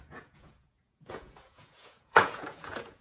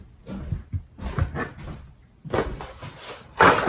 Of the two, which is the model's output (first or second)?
first